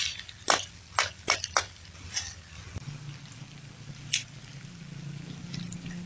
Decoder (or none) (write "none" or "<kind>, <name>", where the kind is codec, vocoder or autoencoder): none